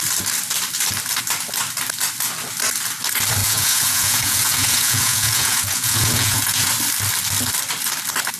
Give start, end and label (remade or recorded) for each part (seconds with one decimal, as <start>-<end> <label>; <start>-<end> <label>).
0.0-3.4 recorded; 3.4-6.7 remade; 6.7-8.4 recorded